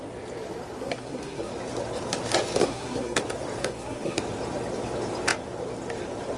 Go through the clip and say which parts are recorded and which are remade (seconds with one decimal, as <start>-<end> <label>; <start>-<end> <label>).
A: 0.0-0.8 recorded; 0.8-1.5 remade; 1.5-2.6 recorded; 2.6-3.2 remade; 3.2-3.6 recorded; 3.6-4.2 remade; 4.2-6.4 recorded